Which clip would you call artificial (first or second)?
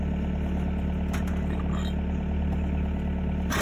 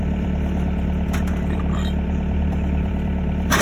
second